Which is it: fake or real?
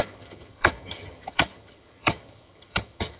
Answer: fake